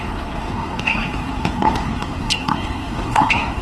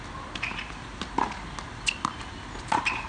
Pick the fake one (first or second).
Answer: first